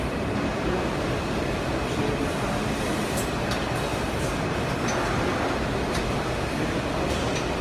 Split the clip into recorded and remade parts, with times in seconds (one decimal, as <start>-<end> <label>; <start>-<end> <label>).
0.0-7.6 recorded